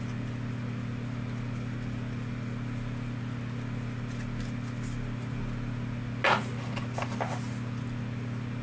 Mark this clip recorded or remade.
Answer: recorded